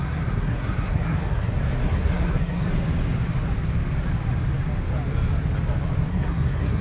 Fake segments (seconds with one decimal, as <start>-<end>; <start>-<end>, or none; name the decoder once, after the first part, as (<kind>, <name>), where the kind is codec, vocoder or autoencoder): 0.0-2.7 (codec, SNAC); 6.1-6.8